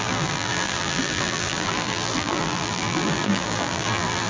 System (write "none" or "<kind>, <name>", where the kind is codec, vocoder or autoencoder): vocoder, BigVGAN v2